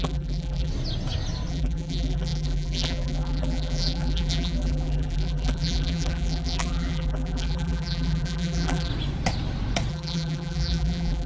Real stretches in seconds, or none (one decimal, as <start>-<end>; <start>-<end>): 0.7-1.5; 8.9-9.9